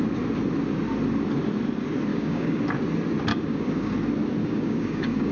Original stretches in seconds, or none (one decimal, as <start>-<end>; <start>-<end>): 0.0-2.1; 2.6-3.3; 3.9-4.4